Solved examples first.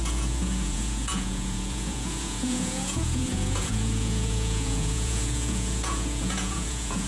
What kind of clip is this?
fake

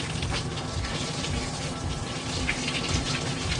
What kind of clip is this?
real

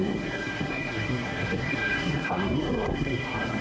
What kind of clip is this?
fake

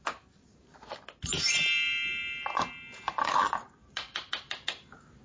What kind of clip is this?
fake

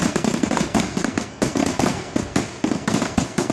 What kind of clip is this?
fake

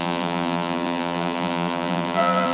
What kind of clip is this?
fake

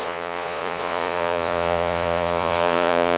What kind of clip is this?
fake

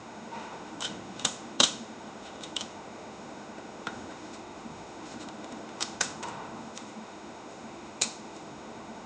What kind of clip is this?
fake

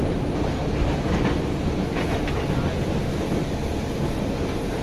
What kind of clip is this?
real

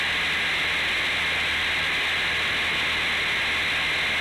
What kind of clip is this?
real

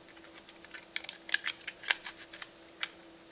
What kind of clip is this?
real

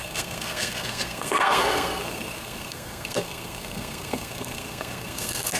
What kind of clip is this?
fake